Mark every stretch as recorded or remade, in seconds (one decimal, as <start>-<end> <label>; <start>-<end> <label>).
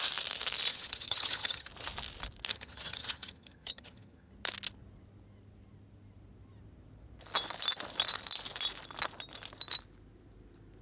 0.0-0.7 recorded; 0.7-1.7 remade; 1.7-2.5 recorded; 2.5-4.3 remade; 4.3-10.8 recorded